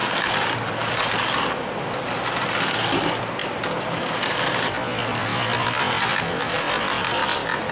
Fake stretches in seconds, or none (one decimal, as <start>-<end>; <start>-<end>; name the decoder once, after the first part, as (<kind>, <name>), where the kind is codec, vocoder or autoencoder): none